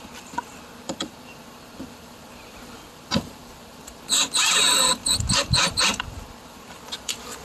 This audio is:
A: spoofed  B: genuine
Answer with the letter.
A